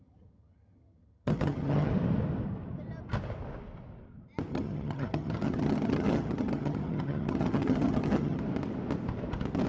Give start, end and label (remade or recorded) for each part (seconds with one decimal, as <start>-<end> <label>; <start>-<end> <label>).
0.0-1.9 remade; 1.9-4.5 recorded; 4.5-8.4 remade; 8.4-9.7 recorded